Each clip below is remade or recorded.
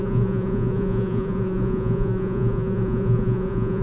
remade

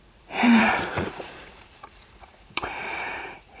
remade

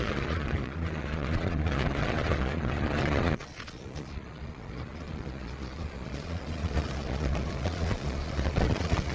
remade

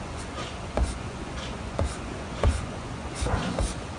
remade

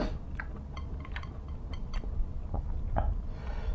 recorded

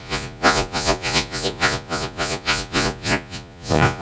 remade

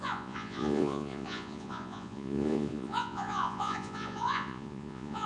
remade